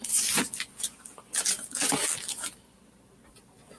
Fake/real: real